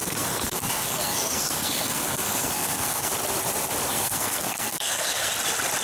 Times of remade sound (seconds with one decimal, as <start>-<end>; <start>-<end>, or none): 0.0-3.1; 3.9-5.3